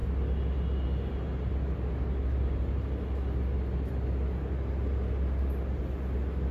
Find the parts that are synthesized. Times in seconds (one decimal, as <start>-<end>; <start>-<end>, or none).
none